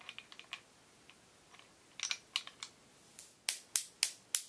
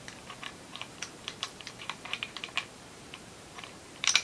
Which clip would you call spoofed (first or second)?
second